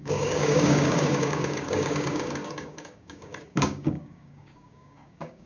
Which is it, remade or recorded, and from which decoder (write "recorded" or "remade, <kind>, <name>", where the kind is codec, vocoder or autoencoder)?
remade, codec, DAC